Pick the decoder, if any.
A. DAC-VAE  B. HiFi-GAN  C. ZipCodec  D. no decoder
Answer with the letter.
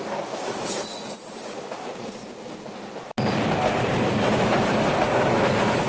D